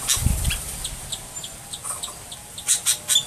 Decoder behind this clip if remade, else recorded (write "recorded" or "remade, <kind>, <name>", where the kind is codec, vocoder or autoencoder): recorded